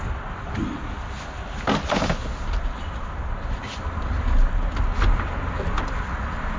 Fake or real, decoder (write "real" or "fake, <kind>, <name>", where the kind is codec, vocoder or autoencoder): real